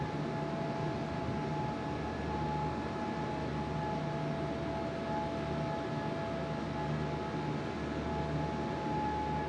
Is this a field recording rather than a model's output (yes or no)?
yes